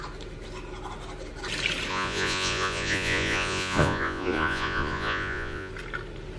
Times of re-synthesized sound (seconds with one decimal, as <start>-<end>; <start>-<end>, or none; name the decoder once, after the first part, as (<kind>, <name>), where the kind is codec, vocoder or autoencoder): 1.9-5.7 (vocoder, Vocos)